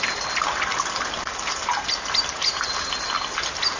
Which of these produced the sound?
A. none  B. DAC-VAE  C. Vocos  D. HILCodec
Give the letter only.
A